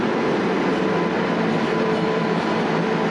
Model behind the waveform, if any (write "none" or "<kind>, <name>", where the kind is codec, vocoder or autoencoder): none